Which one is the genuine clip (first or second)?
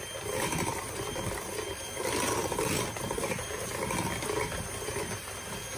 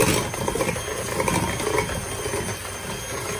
second